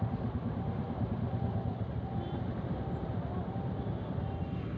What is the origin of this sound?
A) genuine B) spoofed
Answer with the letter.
A